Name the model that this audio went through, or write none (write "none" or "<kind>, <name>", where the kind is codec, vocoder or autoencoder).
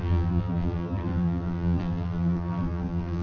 vocoder, BigVGAN v2